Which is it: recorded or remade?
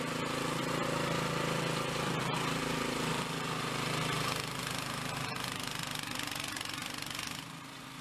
recorded